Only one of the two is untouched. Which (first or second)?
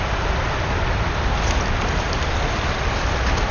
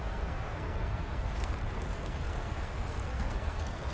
first